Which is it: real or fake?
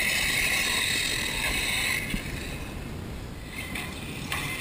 real